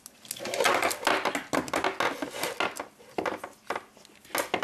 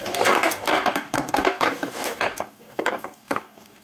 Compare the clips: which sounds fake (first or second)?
second